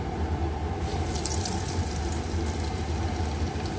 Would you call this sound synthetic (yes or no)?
no